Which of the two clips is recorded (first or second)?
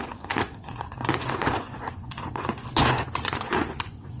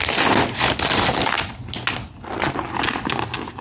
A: second